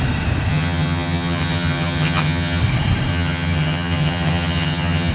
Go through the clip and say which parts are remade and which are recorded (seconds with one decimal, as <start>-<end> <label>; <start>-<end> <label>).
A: 0.0-0.5 recorded; 0.5-2.6 remade; 2.6-3.1 recorded; 3.1-5.1 remade